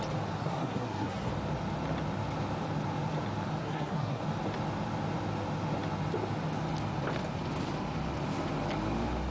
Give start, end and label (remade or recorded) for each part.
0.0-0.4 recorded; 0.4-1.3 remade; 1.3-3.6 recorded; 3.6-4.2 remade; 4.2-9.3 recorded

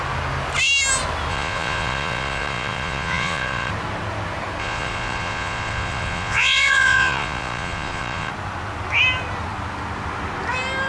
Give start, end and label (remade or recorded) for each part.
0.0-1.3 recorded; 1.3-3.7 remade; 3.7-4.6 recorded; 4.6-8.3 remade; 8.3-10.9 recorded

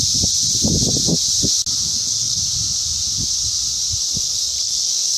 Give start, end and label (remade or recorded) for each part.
0.0-1.9 recorded; 1.9-2.4 remade; 2.4-4.1 recorded; 4.1-5.2 remade

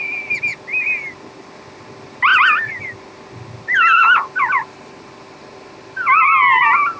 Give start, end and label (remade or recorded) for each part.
0.0-7.0 recorded

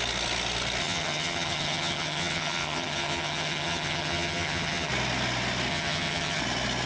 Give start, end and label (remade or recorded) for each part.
0.0-0.8 recorded; 0.8-4.9 remade; 4.9-5.7 recorded; 5.7-6.4 remade; 6.4-6.9 recorded

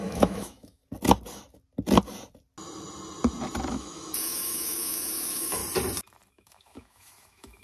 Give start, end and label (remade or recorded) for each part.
0.0-0.8 remade; 0.8-3.7 recorded; 3.7-5.6 remade; 5.6-6.3 recorded; 6.3-7.6 remade

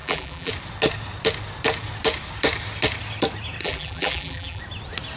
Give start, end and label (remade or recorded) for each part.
0.0-0.5 remade; 0.5-3.6 recorded; 3.6-4.6 remade; 4.6-5.2 recorded